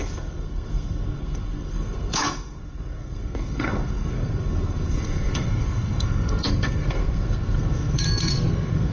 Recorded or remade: remade